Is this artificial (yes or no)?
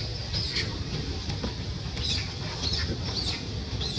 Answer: no